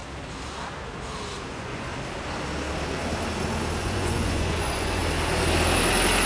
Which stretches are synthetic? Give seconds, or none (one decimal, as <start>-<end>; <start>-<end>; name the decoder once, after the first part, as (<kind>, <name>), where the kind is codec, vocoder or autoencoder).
1.5-1.9 (vocoder, Vocos); 3.8-5.0